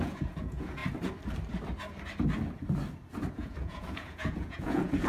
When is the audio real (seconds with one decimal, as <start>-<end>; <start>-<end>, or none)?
0.8-3.3